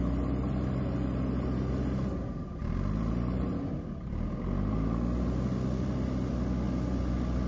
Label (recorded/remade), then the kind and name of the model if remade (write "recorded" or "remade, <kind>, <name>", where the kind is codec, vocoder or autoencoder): recorded